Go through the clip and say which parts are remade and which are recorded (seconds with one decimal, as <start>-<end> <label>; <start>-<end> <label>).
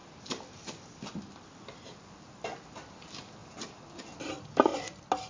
0.0-5.3 recorded